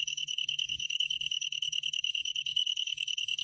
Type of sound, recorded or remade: remade